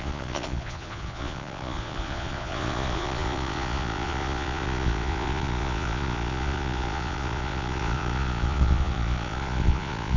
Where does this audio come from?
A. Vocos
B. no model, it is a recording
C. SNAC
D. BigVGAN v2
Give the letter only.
A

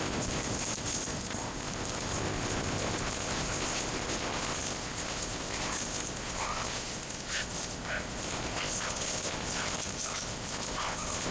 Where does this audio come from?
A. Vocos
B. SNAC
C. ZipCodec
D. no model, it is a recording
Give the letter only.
C